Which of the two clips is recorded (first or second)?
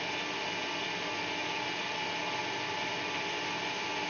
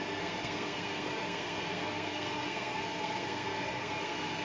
first